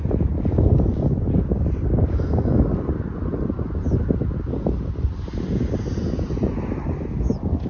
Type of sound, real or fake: real